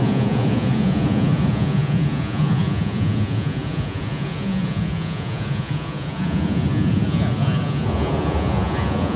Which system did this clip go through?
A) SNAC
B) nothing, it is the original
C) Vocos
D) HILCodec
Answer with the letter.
C